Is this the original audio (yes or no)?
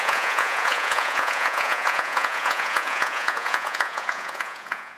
no